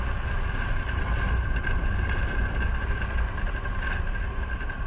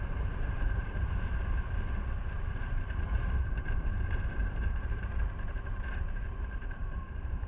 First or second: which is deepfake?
second